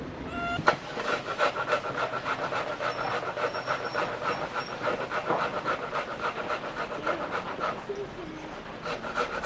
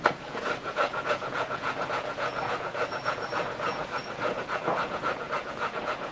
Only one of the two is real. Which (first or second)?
first